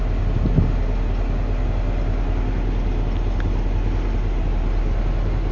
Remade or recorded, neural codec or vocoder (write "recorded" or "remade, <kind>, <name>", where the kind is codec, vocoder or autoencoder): recorded